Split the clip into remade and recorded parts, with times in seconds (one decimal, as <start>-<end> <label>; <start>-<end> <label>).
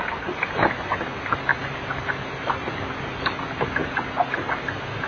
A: 0.0-5.1 recorded